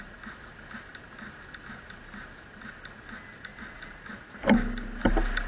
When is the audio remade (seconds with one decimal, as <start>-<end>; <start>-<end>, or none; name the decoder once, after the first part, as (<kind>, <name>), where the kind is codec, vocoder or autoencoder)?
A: none